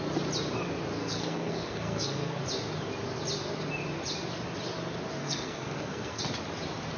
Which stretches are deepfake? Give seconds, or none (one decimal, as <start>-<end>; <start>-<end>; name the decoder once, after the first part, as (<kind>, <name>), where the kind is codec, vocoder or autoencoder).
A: 1.0-2.4 (codec, SNAC); 5.2-6.2